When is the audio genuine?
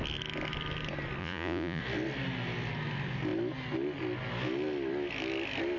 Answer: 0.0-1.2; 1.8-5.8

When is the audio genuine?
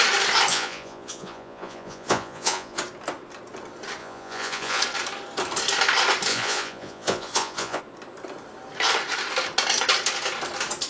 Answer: 0.0-0.5; 2.8-4.0; 4.8-6.3; 7.8-10.9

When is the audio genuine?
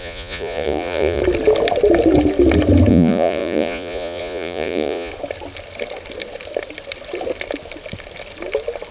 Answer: 1.2-2.9; 5.1-8.9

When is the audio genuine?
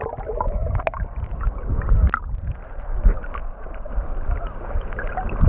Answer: 0.0-3.4; 3.9-5.5